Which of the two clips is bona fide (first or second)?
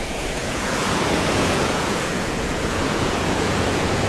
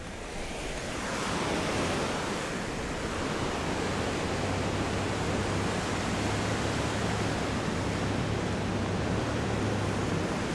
second